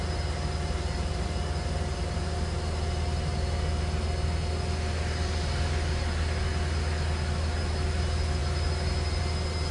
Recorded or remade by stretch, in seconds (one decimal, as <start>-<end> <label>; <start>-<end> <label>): 0.0-9.7 recorded